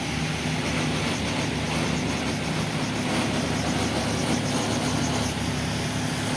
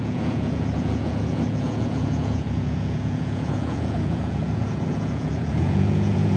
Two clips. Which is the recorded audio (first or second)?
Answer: first